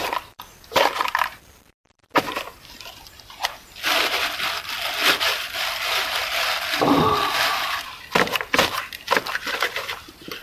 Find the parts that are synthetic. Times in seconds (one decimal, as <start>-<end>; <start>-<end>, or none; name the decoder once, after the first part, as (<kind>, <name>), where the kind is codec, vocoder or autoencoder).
0.0-10.4 (vocoder, BigVGAN v2)